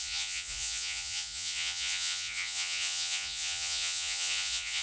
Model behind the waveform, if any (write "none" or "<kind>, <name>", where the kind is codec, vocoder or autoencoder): vocoder, Vocos